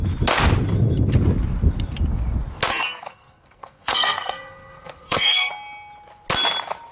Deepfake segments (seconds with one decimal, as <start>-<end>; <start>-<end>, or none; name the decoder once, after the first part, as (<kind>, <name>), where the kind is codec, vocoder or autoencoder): 2.7-5.5 (codec, SNAC)